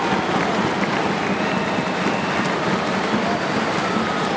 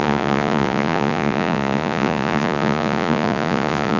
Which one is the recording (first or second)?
first